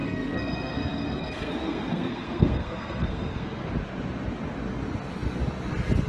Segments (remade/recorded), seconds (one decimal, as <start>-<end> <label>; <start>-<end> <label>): 0.0-3.7 remade; 3.7-6.1 recorded